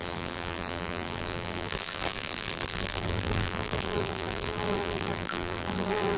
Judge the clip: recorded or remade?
remade